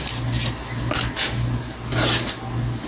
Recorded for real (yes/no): yes